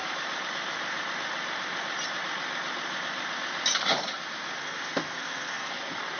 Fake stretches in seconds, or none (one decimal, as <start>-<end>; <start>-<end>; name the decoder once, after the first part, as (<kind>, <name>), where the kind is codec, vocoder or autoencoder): 4.6-5.7 (codec, SNAC)